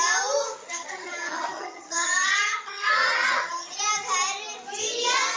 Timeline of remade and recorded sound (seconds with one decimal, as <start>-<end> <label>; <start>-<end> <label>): 0.0-0.6 recorded; 0.6-3.8 remade; 3.8-5.4 recorded

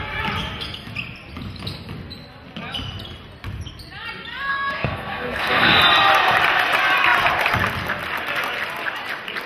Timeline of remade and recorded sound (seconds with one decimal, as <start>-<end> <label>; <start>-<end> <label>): 0.0-4.5 recorded; 4.5-5.8 remade; 5.8-9.5 recorded

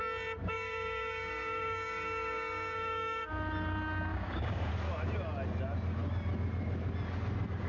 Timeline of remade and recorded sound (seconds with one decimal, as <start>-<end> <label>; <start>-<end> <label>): 0.0-0.4 recorded; 0.4-3.3 remade; 3.3-4.1 recorded; 4.1-4.7 remade; 4.7-7.7 recorded

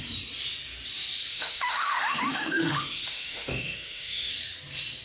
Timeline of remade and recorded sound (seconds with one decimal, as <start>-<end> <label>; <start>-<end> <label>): 0.0-1.3 recorded; 1.3-4.3 remade; 4.3-5.0 recorded

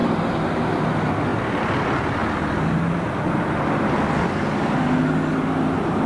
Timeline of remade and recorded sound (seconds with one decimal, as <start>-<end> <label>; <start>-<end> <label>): 0.0-6.1 recorded

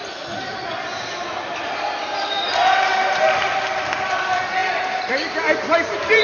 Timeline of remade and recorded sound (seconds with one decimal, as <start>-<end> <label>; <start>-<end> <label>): 0.0-4.6 remade; 4.6-5.1 recorded; 5.1-6.2 remade

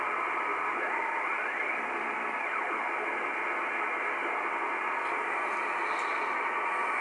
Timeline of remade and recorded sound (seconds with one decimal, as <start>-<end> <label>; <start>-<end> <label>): 0.0-0.5 recorded; 0.5-2.0 remade; 2.0-7.0 recorded